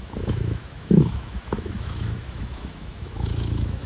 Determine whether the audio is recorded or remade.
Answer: remade